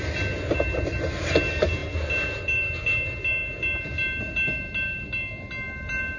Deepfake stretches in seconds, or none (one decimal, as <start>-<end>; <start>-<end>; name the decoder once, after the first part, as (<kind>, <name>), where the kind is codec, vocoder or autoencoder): none